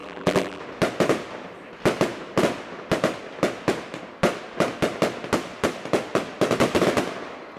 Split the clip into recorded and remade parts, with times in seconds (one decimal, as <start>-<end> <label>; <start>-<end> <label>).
0.0-0.6 remade; 0.6-7.6 recorded